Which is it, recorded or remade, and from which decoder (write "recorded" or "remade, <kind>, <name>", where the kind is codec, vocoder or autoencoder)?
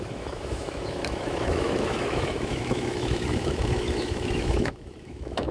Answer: remade, autoencoder, DAC-VAE